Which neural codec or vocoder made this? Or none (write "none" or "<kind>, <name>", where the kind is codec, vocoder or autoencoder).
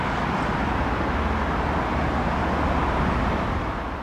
none